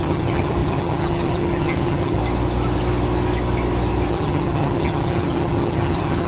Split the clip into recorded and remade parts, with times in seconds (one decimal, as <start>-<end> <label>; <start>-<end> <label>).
0.0-2.2 remade; 2.2-4.1 recorded; 4.1-6.3 remade